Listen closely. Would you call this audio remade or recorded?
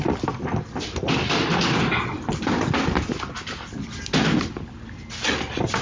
recorded